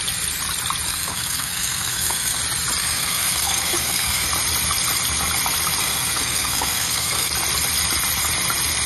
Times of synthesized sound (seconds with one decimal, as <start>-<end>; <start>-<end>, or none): 0.9-2.4; 2.8-4.3; 5.8-7.3